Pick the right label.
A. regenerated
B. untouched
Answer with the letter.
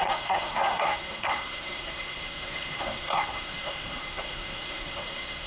A